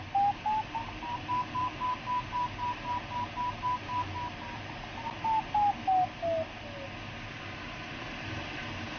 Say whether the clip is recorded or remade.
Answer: recorded